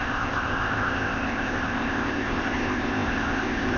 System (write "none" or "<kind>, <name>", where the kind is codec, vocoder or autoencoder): codec, ZipCodec